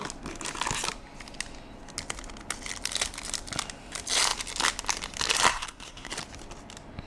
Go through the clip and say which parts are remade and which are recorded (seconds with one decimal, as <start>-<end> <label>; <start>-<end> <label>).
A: 0.0-5.5 recorded; 5.5-6.1 remade; 6.1-7.1 recorded